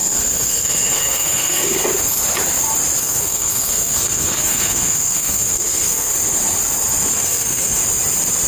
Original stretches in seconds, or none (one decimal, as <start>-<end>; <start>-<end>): 1.7-3.0; 6.1-7.1; 7.8-8.5